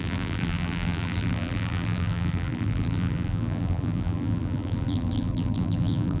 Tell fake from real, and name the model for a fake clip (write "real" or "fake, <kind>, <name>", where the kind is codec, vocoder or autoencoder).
fake, vocoder, BigVGAN v2